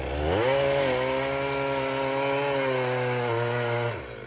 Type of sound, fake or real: real